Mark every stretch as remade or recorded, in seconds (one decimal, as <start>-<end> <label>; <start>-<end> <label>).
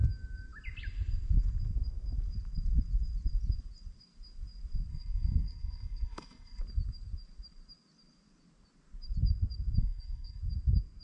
0.0-4.9 recorded; 4.9-6.6 remade; 6.6-9.8 recorded; 9.8-10.4 remade; 10.4-11.0 recorded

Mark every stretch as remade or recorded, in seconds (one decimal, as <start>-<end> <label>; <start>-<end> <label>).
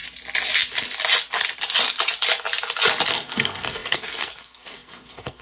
0.0-3.1 recorded; 3.1-5.4 remade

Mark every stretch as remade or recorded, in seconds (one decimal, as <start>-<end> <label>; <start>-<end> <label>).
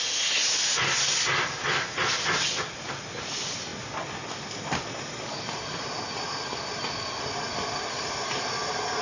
0.0-9.0 recorded